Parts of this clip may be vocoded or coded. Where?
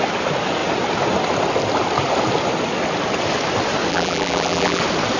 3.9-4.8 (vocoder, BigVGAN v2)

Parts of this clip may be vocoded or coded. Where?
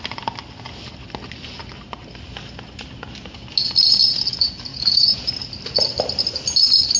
4.7-5.3 (vocoder, Vocos)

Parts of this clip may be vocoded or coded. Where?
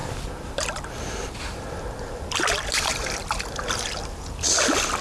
none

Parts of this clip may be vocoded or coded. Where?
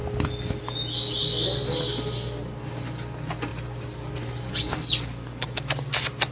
1.2-1.8 (vocoder, BigVGAN v2)